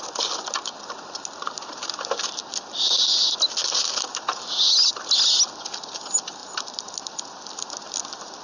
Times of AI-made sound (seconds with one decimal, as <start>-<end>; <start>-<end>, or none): none

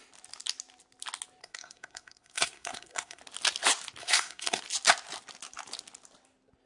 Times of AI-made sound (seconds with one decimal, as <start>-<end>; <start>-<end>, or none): 1.4-3.2; 4.0-4.6

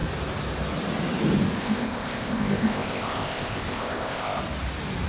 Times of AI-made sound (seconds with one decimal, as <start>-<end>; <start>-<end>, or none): 1.6-4.4

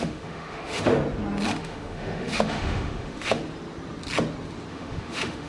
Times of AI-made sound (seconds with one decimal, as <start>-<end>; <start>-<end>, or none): 0.0-0.9; 1.6-3.4; 4.7-5.5

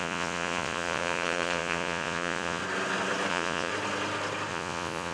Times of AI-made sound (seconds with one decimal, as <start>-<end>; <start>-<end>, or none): 0.0-2.6; 3.3-3.7; 4.5-5.1

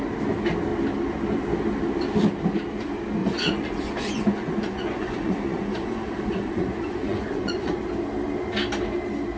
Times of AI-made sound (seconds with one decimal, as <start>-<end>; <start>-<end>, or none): 3.2-7.8